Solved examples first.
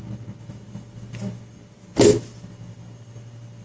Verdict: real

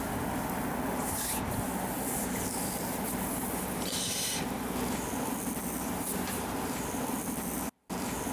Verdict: real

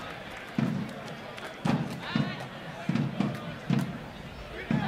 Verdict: real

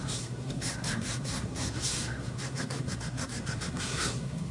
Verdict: fake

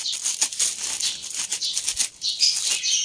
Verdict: real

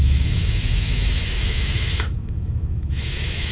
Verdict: fake